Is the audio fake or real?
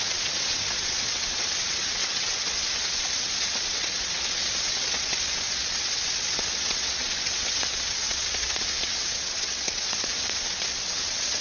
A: fake